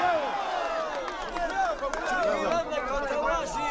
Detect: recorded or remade recorded